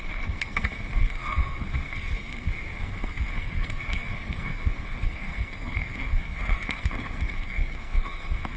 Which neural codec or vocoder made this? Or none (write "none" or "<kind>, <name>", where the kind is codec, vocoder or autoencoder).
codec, SNAC